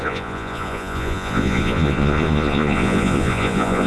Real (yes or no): no